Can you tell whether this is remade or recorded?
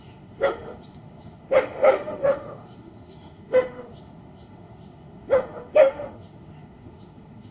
remade